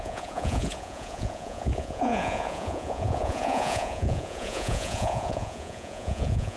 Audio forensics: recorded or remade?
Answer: remade